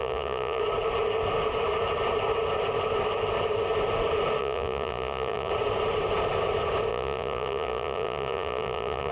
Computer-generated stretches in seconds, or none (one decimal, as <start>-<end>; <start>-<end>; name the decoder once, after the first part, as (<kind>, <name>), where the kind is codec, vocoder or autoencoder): 0.0-0.6 (vocoder, Vocos); 4.4-5.5; 6.9-9.1